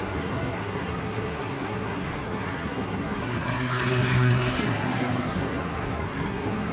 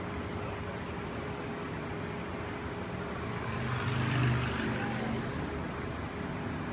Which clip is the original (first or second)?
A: second